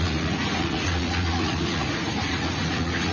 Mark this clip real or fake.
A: fake